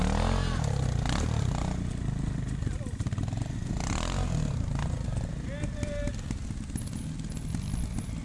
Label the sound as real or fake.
real